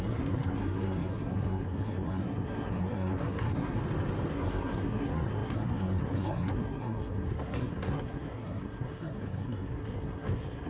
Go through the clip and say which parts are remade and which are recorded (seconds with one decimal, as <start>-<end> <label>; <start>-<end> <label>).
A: 0.0-3.8 remade; 3.8-4.3 recorded; 4.3-10.7 remade